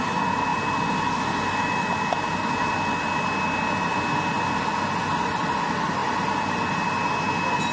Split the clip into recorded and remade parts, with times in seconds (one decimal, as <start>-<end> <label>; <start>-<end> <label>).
0.0-7.7 recorded

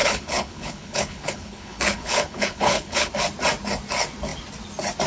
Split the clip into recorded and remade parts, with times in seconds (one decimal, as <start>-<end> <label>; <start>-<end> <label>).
0.0-3.1 remade; 3.1-5.1 recorded

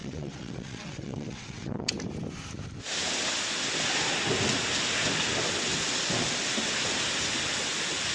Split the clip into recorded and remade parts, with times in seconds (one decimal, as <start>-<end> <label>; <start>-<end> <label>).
0.0-1.9 remade; 1.9-8.1 recorded

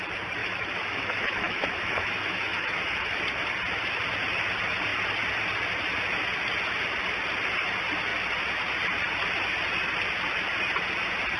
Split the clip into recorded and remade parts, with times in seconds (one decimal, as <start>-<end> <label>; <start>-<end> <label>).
0.0-0.4 recorded; 0.4-3.2 remade; 3.2-11.4 recorded

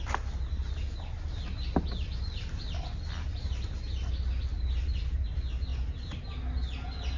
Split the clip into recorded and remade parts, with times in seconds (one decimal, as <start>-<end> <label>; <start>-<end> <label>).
0.0-4.5 recorded; 4.5-5.3 remade; 5.3-5.7 recorded; 5.7-6.2 remade; 6.2-7.2 recorded

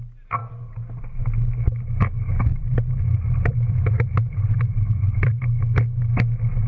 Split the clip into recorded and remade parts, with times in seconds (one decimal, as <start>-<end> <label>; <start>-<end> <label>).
0.0-2.5 recorded; 2.5-5.4 remade; 5.4-6.7 recorded

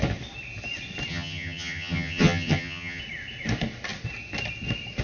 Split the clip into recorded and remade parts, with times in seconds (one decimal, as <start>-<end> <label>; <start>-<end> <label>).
0.0-1.1 recorded; 1.1-3.0 remade; 3.0-5.0 recorded